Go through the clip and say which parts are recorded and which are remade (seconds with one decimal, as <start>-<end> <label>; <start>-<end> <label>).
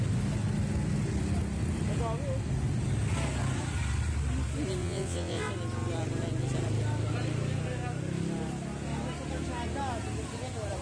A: 0.0-4.8 recorded; 4.8-5.5 remade; 5.5-10.8 recorded